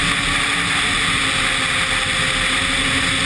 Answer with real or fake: real